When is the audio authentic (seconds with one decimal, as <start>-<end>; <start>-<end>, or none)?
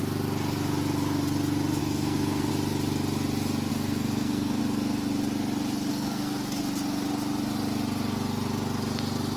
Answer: 0.0-1.8; 2.5-3.7; 4.6-5.9; 6.6-9.4